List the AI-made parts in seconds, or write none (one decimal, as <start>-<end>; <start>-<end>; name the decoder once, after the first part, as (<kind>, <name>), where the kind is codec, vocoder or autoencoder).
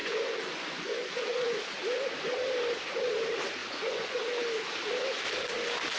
0.0-1.6 (vocoder, Vocos); 3.6-4.2